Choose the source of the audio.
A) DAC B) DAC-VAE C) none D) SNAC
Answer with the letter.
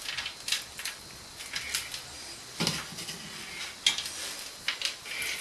C